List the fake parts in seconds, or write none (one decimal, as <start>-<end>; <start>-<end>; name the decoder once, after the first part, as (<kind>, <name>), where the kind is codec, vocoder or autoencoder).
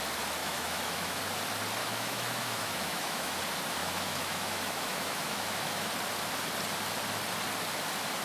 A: 0.4-1.2 (autoencoder, DAC-VAE); 1.8-3.4; 3.8-5.9